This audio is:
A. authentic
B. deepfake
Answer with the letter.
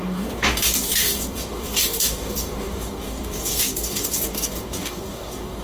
B